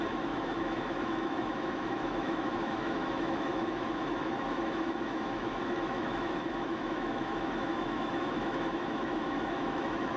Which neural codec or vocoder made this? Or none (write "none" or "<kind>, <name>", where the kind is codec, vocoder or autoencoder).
autoencoder, DAC-VAE